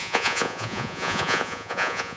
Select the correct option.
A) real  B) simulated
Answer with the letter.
B